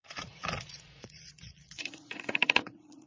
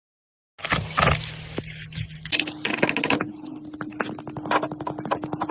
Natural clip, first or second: second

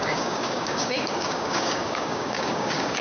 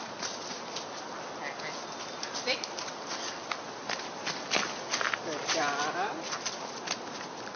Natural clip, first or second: second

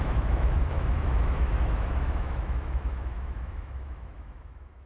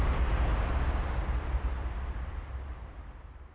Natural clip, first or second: second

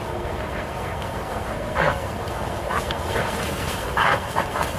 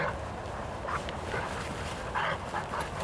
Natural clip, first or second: second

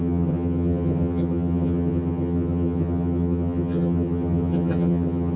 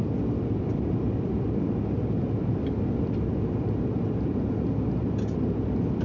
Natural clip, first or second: second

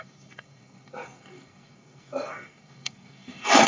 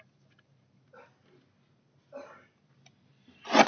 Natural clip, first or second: second